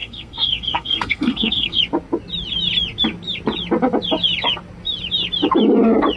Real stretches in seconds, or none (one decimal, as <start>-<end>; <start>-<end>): 1.8-6.2